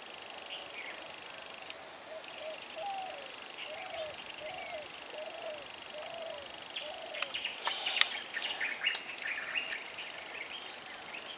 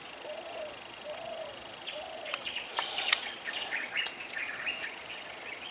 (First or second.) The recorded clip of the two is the first